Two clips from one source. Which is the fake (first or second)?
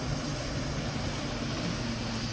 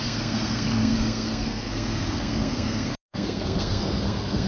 second